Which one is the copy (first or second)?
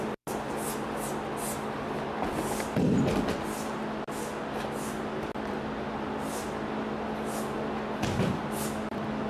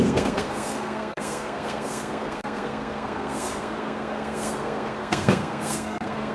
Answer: second